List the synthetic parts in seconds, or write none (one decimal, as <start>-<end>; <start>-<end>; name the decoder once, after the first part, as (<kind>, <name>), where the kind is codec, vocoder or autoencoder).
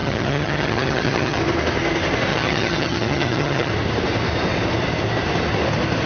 0.0-1.4 (vocoder, HiFi-GAN); 2.3-3.7